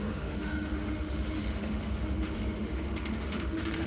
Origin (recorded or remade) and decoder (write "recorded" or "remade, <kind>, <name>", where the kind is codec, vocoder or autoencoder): remade, autoencoder, DAC-VAE